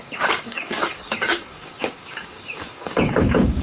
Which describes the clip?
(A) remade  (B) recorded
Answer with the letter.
A